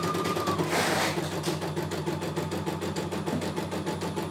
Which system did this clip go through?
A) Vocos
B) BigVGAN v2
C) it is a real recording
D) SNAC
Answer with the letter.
C